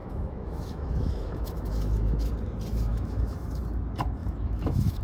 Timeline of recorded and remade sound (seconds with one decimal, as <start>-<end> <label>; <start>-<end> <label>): 0.0-2.3 remade; 2.3-2.9 recorded; 2.9-3.6 remade; 3.6-4.2 recorded; 4.2-5.0 remade